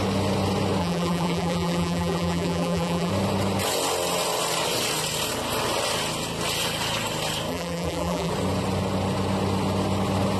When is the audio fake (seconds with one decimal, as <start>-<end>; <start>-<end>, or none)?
0.8-3.1; 7.5-8.3